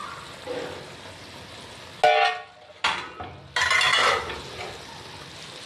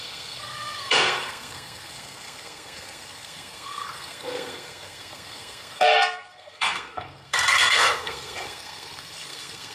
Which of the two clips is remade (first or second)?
second